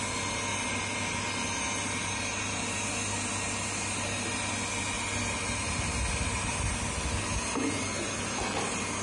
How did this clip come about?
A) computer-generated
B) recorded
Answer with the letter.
B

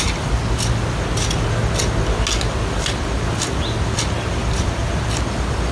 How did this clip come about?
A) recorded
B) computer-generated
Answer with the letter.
A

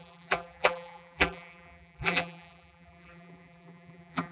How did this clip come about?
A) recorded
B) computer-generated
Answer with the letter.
B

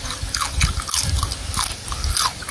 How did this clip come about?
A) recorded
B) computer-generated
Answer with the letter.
A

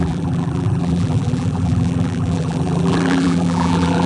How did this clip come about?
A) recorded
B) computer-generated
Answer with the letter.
B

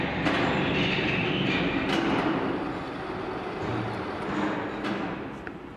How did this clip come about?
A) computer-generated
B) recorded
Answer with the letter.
B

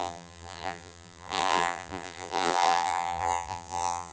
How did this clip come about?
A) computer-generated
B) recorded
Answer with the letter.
A